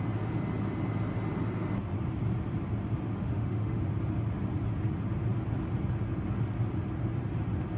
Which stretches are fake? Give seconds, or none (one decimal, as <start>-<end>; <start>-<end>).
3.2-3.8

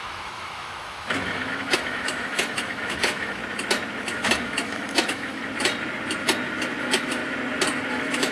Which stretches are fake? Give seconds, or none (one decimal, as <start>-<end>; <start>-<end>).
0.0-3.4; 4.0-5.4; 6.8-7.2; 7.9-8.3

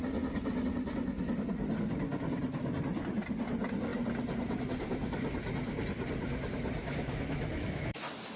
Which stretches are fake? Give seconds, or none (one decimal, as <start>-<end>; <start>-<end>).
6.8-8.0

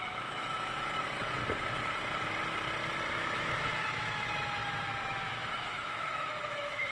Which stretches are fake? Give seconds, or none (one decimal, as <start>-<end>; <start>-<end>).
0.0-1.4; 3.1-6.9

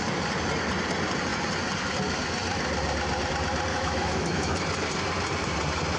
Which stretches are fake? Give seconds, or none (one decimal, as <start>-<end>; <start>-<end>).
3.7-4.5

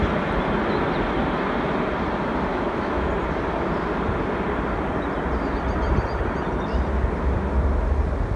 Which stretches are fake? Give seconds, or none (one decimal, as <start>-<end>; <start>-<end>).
2.5-3.1